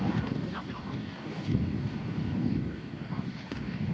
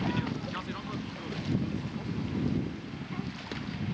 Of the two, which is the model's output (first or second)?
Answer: first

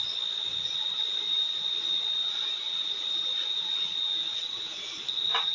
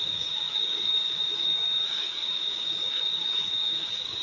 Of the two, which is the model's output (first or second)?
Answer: second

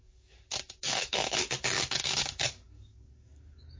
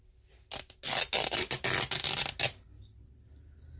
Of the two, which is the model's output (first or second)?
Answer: first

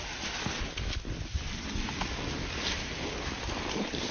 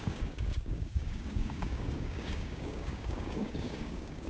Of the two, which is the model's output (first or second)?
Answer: second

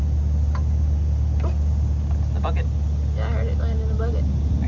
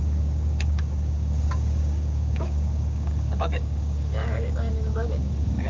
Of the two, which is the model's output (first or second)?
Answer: second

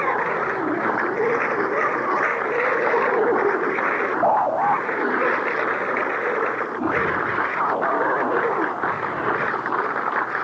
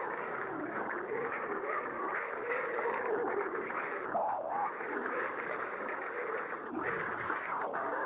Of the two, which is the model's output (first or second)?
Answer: second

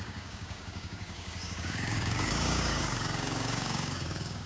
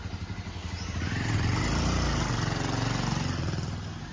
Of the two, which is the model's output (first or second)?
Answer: first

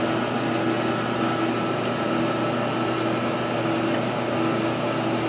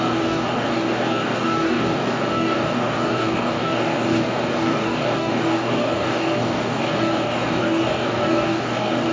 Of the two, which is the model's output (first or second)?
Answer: second